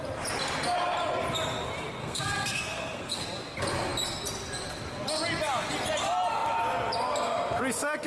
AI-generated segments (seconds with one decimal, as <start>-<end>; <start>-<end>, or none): 2.0-3.2